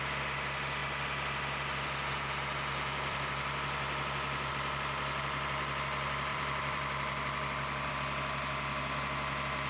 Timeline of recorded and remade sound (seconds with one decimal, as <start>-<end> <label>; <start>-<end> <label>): 0.0-0.8 recorded; 0.8-4.5 remade; 4.5-6.3 recorded; 6.3-7.9 remade; 7.9-9.7 recorded